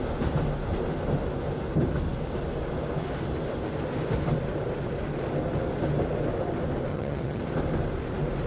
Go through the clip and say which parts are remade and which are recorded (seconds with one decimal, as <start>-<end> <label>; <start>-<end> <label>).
0.0-6.9 recorded; 6.9-7.4 remade; 7.4-8.5 recorded